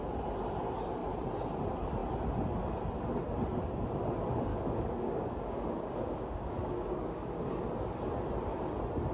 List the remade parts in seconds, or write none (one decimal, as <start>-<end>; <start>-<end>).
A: 4.5-7.5